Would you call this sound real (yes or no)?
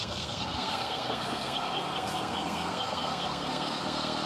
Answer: no